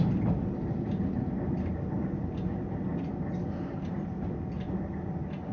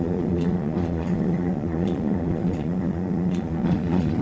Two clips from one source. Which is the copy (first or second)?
second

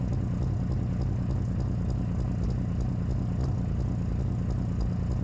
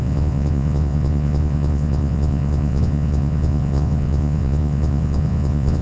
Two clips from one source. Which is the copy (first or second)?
second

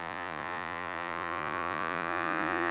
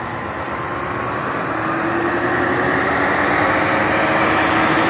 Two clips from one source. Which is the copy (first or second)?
first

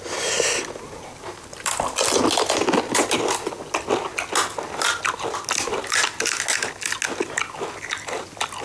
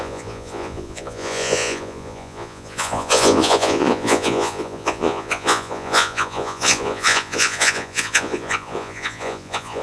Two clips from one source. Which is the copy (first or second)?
second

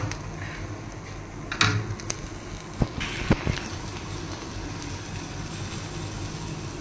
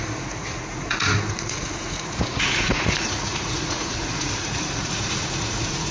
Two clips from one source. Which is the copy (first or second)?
second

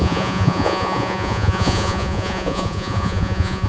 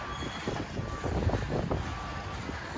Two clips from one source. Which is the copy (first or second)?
first